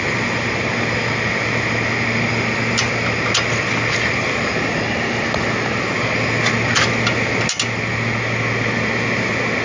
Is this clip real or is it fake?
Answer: real